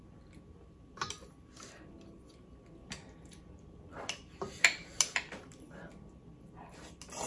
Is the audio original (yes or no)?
yes